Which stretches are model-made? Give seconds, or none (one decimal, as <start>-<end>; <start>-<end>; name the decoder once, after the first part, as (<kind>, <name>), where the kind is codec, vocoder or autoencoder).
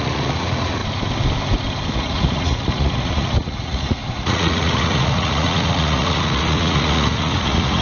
0.0-0.8 (vocoder, Vocos); 1.9-7.8